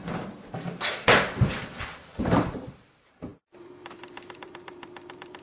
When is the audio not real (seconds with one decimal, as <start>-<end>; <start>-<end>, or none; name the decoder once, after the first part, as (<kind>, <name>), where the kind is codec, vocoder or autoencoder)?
0.0-5.4 (vocoder, BigVGAN v2)